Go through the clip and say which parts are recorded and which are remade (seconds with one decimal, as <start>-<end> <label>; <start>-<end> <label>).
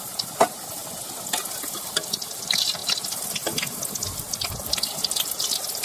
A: 0.0-0.8 remade; 0.8-1.8 recorded; 1.8-2.8 remade; 2.8-4.5 recorded; 4.5-5.8 remade